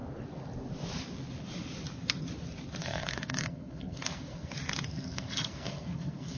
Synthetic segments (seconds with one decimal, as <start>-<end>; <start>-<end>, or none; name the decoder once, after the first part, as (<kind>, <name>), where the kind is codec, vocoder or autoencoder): 2.8-4.5 (codec, SNAC); 4.9-6.4